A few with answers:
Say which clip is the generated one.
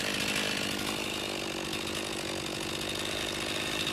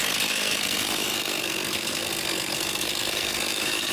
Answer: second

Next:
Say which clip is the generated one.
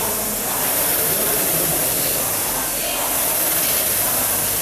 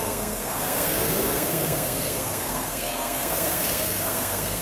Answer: second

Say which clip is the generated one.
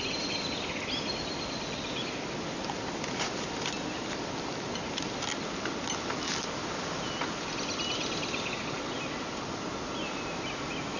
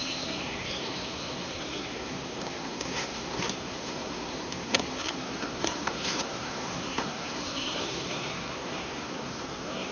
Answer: second